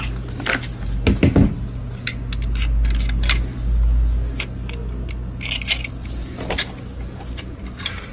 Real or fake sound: real